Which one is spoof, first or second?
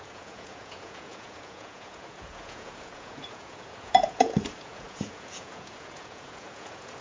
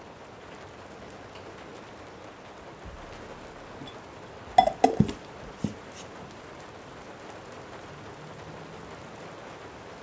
first